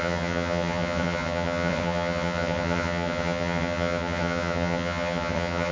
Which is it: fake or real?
fake